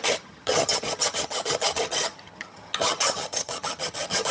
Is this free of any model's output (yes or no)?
no